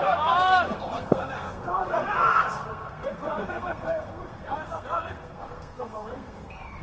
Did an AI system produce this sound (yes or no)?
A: yes